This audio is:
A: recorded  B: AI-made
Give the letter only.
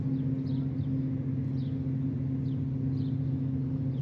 A